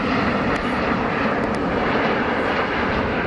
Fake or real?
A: real